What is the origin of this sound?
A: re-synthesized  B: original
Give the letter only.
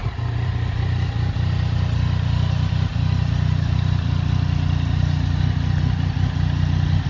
B